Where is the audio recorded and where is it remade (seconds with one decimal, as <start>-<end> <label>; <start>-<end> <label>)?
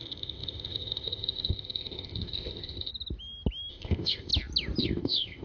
0.0-2.9 remade; 2.9-3.7 recorded; 3.7-4.3 remade; 4.3-4.8 recorded; 4.8-5.4 remade